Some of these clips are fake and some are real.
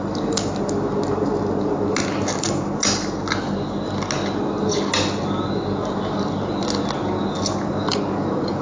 real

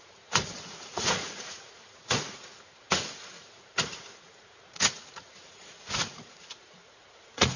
fake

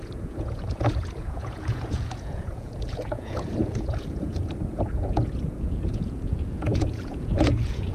fake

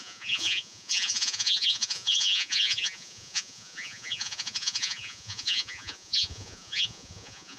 fake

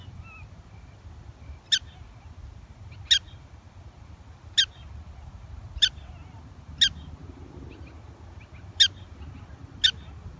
real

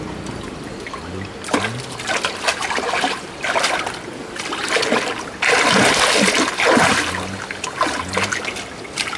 real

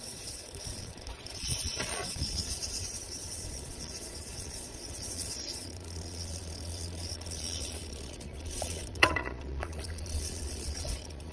fake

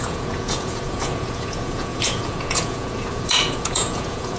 fake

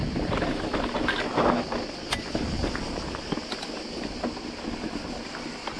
real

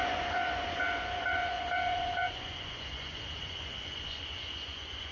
fake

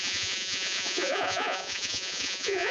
fake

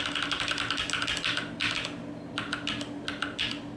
real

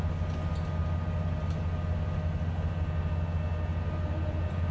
real